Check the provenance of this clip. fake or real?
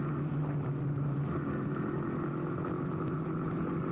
real